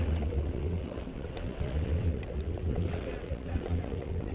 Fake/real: fake